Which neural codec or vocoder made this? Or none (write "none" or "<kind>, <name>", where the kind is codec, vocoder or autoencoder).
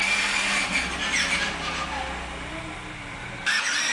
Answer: none